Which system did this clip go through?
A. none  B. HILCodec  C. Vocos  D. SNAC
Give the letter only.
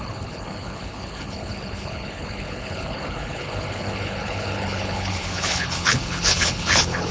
B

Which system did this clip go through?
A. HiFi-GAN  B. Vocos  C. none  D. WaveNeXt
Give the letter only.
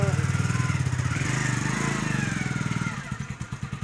C